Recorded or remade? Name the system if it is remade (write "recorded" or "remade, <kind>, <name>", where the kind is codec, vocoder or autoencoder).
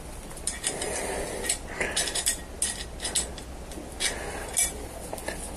recorded